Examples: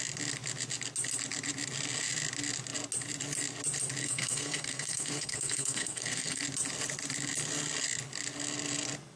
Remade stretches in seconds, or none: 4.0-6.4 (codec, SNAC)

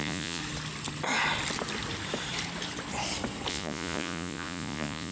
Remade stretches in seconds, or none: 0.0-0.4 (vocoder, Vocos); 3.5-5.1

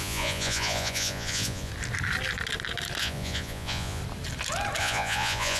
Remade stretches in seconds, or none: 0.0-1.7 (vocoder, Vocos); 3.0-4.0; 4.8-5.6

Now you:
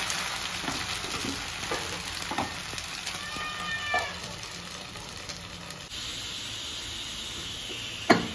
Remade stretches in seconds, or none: none